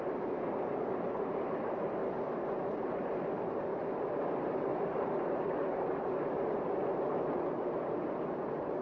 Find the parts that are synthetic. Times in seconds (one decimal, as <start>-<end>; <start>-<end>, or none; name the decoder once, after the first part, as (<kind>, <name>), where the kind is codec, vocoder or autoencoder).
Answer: 0.0-2.0 (vocoder, BigVGAN v2); 3.5-4.7